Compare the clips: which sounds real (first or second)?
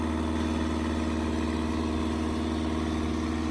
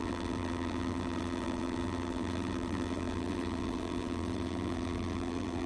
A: first